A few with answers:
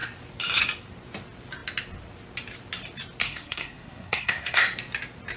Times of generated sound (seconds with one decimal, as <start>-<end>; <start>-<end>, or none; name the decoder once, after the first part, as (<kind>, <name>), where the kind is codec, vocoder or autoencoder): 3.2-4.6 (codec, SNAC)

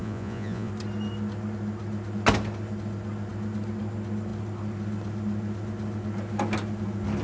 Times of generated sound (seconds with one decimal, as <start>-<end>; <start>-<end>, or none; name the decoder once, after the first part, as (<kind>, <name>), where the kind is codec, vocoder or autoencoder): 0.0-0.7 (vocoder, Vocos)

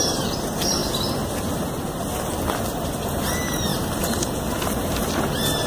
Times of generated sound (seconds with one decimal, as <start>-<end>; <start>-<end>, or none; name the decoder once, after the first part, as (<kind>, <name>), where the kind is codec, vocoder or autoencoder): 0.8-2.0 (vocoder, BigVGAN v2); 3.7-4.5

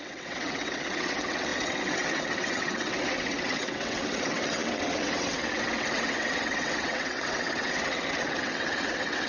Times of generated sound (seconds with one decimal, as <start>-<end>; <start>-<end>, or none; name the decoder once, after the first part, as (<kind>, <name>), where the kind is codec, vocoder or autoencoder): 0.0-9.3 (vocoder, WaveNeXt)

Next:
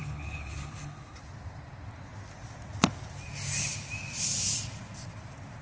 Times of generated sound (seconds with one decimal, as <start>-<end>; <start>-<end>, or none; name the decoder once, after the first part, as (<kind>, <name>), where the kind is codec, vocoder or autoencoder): 0.0-1.2 (codec, HILCodec)

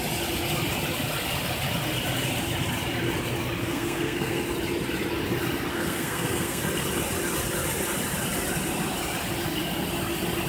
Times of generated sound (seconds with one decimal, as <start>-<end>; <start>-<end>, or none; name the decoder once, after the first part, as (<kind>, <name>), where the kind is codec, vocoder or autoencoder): 3.6-4.4 (codec, SNAC); 5.7-6.6

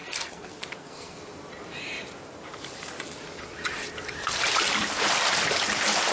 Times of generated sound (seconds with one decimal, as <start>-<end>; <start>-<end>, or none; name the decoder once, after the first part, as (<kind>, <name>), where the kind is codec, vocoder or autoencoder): 0.0-1.2 (codec, SNAC)

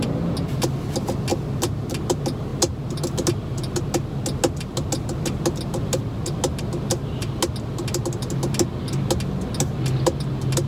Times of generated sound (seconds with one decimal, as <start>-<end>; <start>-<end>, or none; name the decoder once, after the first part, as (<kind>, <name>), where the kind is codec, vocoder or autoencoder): none